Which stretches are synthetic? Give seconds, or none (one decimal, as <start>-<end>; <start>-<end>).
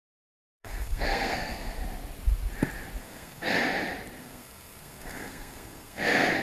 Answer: 0.0-1.8; 3.0-3.6; 4.2-6.4